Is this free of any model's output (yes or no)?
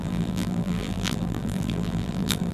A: no